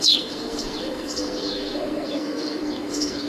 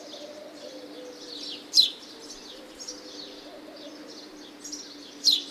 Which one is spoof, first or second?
first